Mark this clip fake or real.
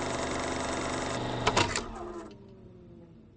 real